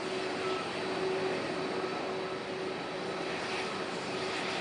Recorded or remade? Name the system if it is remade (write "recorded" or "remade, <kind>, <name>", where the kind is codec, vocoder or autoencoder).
recorded